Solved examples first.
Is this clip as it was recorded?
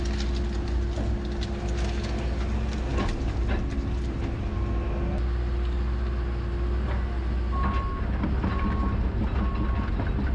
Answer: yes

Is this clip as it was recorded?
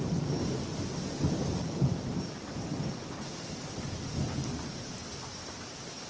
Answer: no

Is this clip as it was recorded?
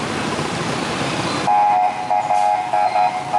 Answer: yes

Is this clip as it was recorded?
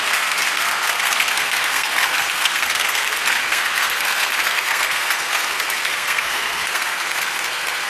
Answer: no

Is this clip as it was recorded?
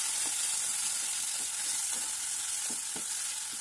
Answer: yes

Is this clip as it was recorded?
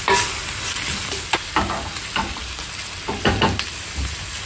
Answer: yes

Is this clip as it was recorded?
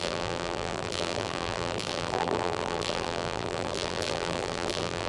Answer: no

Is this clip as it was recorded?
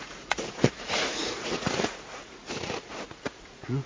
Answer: no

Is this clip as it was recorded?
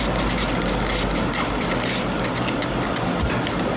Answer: yes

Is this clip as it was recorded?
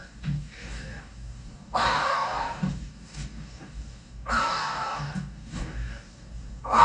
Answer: no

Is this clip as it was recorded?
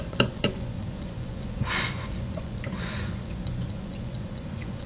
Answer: no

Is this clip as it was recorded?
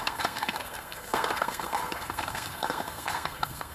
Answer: no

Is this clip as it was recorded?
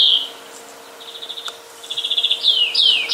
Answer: yes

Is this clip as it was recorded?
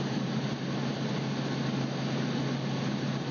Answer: yes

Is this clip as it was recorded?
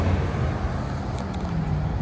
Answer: yes